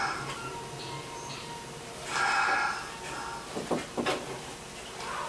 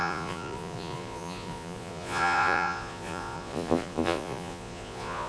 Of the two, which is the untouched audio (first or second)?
first